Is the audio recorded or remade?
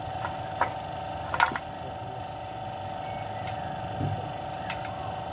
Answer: recorded